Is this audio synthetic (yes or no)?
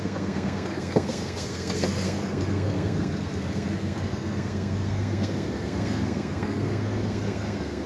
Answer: yes